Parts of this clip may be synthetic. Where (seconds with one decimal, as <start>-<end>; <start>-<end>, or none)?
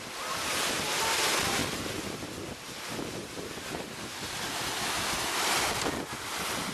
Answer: none